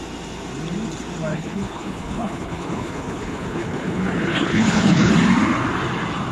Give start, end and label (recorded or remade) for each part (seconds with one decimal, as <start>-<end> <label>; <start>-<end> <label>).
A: 0.0-1.3 recorded; 1.3-5.1 remade; 5.1-6.3 recorded

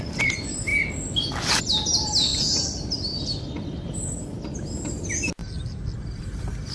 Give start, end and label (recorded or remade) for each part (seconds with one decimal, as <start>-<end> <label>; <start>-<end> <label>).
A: 0.0-6.7 recorded

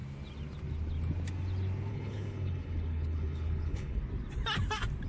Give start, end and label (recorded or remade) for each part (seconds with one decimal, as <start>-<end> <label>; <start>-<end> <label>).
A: 0.0-1.9 recorded; 1.9-4.0 remade; 4.0-5.1 recorded

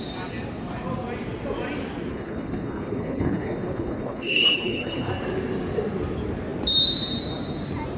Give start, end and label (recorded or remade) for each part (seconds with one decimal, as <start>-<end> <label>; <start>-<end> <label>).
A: 0.0-2.1 recorded; 2.1-5.1 remade; 5.1-8.0 recorded